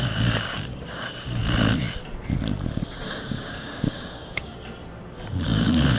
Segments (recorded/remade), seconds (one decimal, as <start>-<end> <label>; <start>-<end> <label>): 0.0-1.4 remade; 1.4-3.2 recorded; 3.2-4.5 remade; 4.5-5.3 recorded; 5.3-6.0 remade